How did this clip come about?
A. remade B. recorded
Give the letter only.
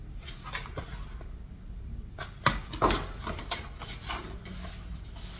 B